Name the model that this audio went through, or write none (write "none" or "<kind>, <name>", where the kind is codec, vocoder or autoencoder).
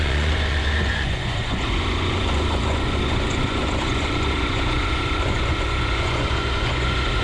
vocoder, Vocos